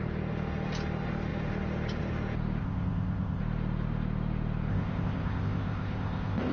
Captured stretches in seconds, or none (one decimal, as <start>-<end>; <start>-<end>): 0.0-2.6; 3.4-4.7